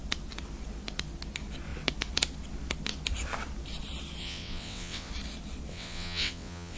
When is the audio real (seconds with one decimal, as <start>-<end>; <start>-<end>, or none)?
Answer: 0.0-4.2; 5.1-5.7